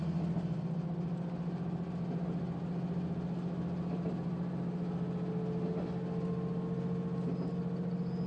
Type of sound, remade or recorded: recorded